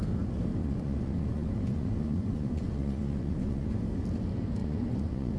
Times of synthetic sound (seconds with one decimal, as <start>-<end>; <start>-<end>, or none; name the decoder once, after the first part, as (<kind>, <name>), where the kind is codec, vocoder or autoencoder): 0.6-3.8 (vocoder, Vocos); 4.6-5.4